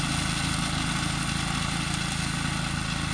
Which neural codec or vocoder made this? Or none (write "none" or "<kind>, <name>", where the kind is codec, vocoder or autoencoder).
none